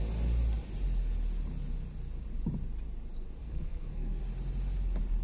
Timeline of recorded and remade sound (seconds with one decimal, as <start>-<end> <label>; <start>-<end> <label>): 0.0-3.4 recorded; 3.4-4.2 remade; 4.2-5.2 recorded